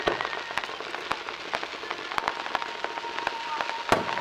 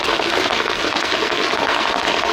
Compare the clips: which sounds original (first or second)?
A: first